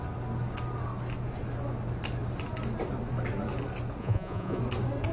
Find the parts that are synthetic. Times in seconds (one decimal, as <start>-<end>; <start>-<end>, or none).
4.0-4.6